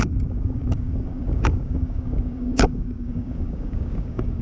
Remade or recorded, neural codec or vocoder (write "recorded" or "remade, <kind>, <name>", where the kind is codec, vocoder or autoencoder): remade, codec, DAC